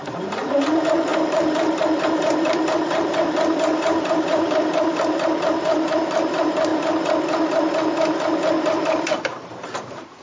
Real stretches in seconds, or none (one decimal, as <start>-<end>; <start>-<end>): 6.7-8.8